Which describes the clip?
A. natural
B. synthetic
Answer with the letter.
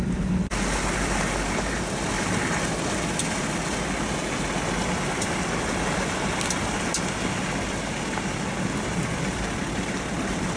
A